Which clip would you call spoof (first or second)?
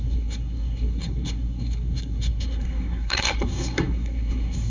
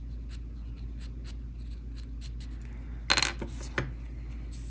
first